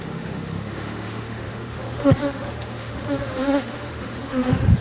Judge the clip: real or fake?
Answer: fake